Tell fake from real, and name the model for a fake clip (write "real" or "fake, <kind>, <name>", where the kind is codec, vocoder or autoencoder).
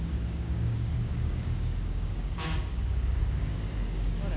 fake, codec, DAC